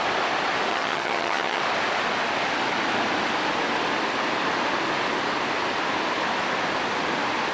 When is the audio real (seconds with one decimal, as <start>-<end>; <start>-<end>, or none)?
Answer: 0.0-0.7; 1.6-7.5